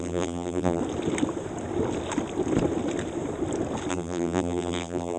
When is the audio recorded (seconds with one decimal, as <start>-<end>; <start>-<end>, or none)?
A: 0.8-3.9